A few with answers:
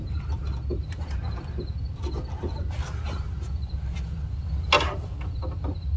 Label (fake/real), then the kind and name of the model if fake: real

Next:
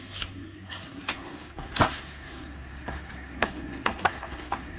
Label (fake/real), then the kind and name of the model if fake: fake, codec, SNAC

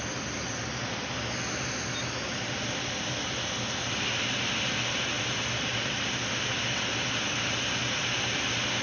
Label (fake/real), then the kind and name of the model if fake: real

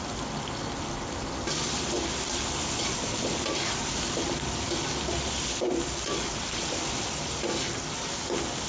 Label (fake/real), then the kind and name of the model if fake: real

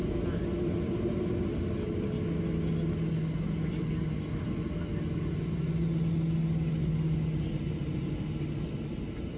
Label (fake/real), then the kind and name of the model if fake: real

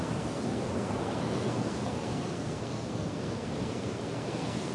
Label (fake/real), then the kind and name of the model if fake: fake, codec, SNAC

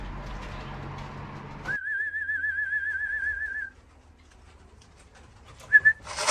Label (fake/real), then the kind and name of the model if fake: real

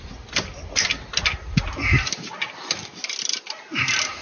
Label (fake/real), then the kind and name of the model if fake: real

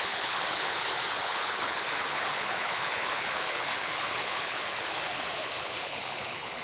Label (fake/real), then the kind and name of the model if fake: fake, codec, HILCodec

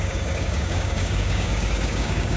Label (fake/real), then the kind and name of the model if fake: fake, codec, DAC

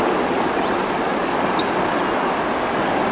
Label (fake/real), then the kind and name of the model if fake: real